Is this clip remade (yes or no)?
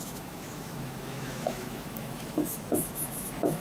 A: yes